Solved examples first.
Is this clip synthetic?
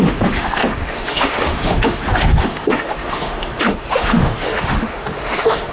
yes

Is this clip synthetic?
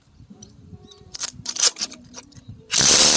yes